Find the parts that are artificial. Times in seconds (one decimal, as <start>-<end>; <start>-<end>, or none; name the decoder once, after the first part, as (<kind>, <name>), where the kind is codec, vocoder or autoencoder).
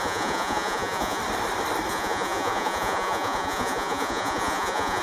0.0-1.2 (vocoder, Vocos); 1.9-5.0